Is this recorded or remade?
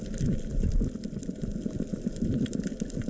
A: recorded